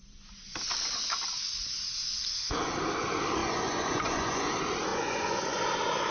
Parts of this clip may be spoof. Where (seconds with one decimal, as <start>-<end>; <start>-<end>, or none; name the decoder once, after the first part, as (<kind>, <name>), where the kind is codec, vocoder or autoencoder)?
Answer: 3.4-4.5 (vocoder, Vocos); 4.9-5.6